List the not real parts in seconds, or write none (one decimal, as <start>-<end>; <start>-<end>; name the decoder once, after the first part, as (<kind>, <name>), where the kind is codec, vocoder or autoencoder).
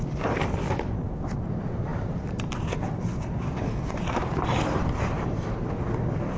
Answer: 1.9-5.7 (vocoder, BigVGAN v2)